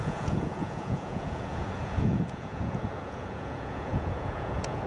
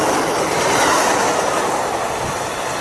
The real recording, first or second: second